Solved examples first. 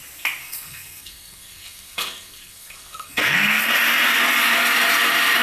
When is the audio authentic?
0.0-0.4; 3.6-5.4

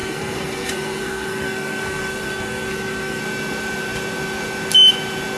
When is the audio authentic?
3.2-5.4

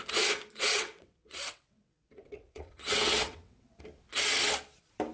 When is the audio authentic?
0.0-0.7; 3.8-5.1

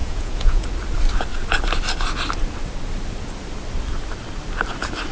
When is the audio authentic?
0.7-5.1

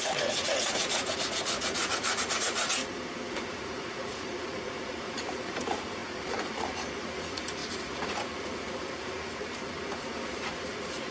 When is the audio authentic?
2.8-3.3

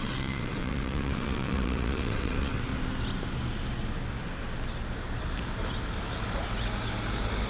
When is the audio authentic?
2.7-7.5

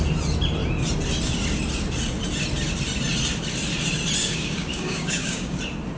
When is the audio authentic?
0.0-4.2; 5.6-6.0